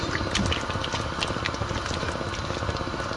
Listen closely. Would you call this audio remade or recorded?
recorded